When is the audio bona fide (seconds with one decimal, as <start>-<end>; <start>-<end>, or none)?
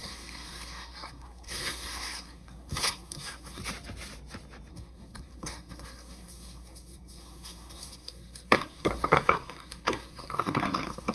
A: 3.6-4.7